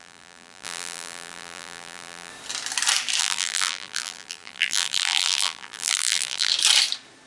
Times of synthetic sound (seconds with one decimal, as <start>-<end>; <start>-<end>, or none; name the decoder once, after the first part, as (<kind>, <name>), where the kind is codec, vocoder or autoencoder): 0.0-2.3 (vocoder, BigVGAN v2); 3.2-6.5